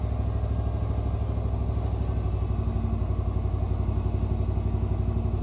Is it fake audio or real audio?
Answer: real